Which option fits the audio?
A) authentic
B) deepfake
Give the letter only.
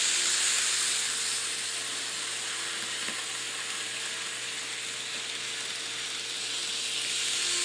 A